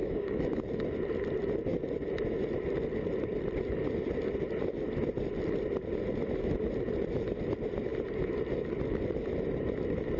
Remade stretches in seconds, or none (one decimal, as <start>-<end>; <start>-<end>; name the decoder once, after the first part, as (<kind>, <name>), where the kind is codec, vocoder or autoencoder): 0.0-0.6 (codec, DAC)